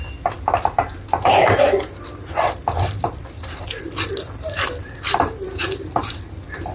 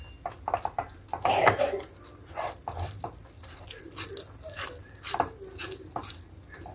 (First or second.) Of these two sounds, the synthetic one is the first